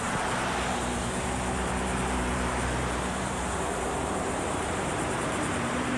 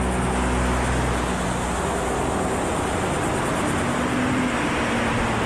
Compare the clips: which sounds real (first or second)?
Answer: second